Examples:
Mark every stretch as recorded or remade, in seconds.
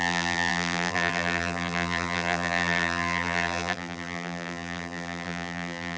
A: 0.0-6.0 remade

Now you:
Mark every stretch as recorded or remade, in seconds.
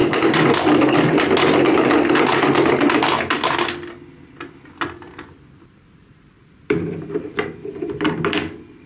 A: 0.0-6.0 recorded; 6.0-6.9 remade; 6.9-8.9 recorded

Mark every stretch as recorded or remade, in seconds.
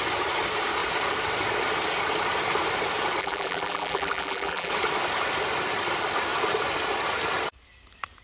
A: 0.0-3.2 recorded; 3.2-4.7 remade; 4.7-8.2 recorded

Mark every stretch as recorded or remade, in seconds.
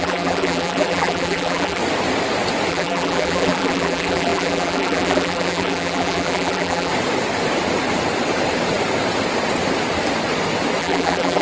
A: 0.0-1.8 remade; 1.8-2.7 recorded; 2.7-6.9 remade; 6.9-10.8 recorded; 10.8-11.4 remade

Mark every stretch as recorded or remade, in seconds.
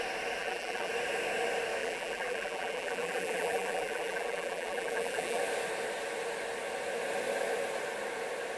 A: 0.0-0.4 recorded; 0.4-0.9 remade; 0.9-1.8 recorded; 1.8-5.4 remade; 5.4-8.6 recorded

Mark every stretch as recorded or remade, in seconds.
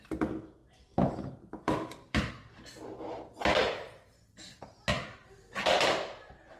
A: 0.0-0.6 recorded; 0.6-2.3 remade; 2.3-3.6 recorded; 3.6-4.4 remade; 4.4-6.6 recorded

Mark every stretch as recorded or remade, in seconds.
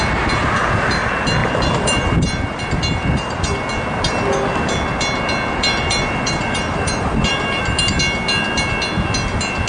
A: 0.0-1.4 recorded; 1.4-3.5 remade; 3.5-5.5 recorded; 5.5-7.6 remade; 7.6-9.7 recorded